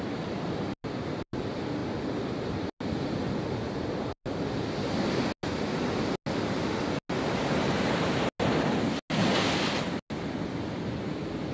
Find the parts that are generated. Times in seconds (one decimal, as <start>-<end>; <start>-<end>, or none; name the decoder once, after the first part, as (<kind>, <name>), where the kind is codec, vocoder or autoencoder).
none